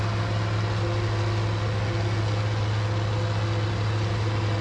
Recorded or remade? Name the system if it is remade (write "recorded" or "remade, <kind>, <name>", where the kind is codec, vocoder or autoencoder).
recorded